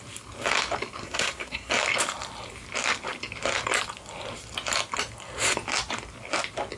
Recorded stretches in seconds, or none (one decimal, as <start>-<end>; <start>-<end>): 0.0-1.0; 1.7-6.8